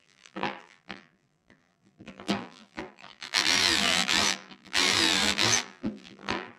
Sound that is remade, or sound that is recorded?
remade